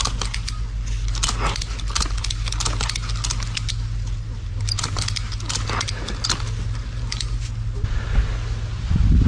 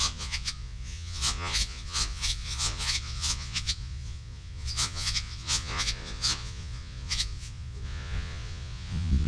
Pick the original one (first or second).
first